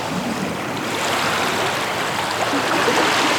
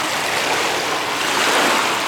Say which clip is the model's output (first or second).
second